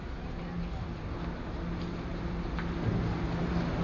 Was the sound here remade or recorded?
recorded